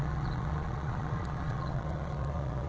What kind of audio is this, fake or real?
fake